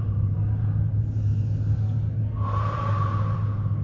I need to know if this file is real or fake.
real